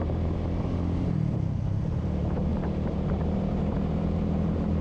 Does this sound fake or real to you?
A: fake